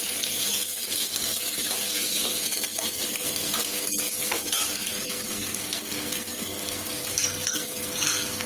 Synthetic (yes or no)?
yes